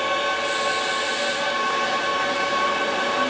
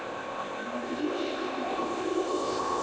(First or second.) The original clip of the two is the first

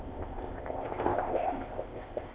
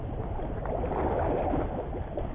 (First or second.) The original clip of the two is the second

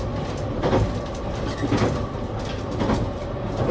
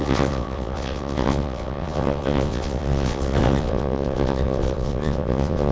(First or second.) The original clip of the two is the first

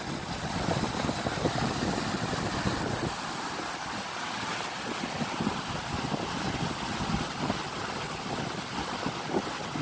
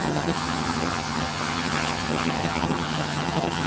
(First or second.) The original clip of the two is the first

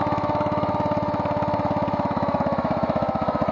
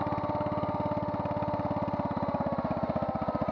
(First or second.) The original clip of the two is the second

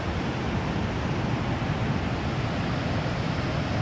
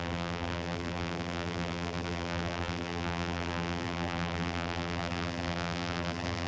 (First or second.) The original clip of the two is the first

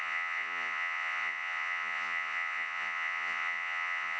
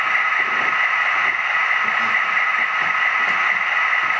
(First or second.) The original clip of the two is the second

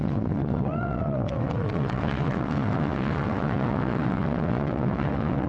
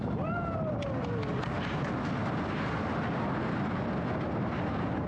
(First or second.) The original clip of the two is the second